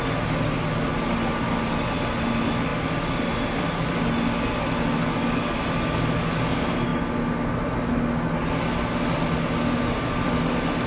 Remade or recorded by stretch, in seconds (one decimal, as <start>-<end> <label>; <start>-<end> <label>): 0.0-10.9 recorded